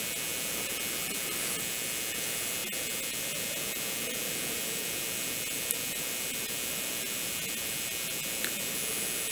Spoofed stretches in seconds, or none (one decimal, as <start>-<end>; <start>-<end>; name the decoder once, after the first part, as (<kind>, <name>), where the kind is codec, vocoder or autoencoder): none